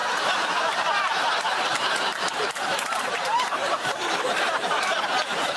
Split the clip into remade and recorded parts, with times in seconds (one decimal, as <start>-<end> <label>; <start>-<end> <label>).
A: 0.0-1.2 remade; 1.2-2.1 recorded; 2.1-5.0 remade; 5.0-5.6 recorded